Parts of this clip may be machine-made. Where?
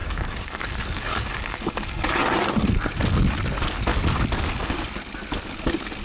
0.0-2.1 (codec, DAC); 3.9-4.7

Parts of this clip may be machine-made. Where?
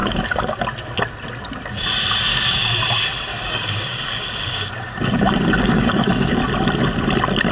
0.0-0.6 (codec, DAC); 2.3-2.8; 3.3-6.3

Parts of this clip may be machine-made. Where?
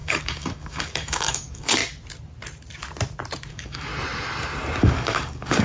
0.0-1.8 (codec, DAC); 3.5-3.9; 4.8-5.6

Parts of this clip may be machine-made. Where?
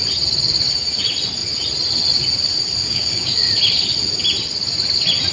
2.8-3.5 (codec, DAC)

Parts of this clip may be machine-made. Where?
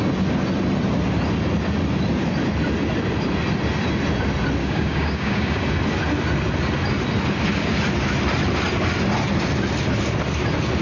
4.6-5.6 (codec, DAC)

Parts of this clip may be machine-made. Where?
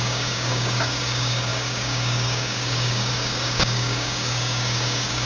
0.0-5.3 (codec, DAC)